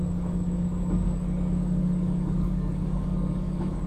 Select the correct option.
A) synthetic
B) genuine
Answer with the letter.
A